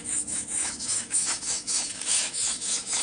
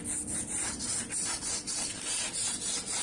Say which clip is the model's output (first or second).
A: first